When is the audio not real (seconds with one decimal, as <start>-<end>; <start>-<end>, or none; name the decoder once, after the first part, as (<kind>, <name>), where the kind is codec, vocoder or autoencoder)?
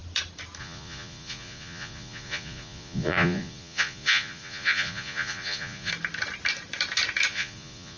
0.6-5.9 (vocoder, Vocos); 7.3-8.0